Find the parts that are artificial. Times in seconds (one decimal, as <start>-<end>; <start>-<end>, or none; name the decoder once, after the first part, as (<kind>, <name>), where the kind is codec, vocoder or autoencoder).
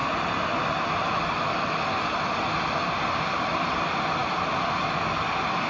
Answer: none